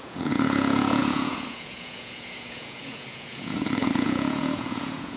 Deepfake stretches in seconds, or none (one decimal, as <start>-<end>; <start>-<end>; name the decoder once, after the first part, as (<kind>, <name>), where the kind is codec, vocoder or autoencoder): 0.0-5.2 (vocoder, Vocos)